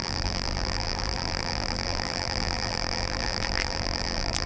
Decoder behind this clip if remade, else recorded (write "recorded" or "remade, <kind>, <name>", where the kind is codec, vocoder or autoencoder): remade, vocoder, BigVGAN v2